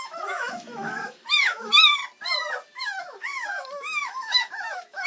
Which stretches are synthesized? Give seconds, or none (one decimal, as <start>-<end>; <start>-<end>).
0.0-2.0; 2.8-5.1